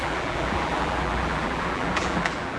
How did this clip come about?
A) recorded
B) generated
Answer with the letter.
B